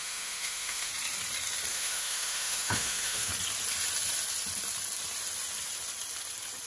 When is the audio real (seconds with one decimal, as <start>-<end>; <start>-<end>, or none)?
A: 0.9-1.7; 3.3-6.7